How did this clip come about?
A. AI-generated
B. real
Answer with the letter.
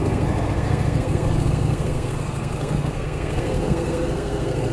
A